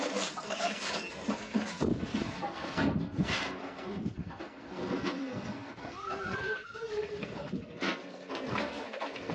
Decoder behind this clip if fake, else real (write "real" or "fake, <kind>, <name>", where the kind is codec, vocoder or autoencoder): fake, codec, SNAC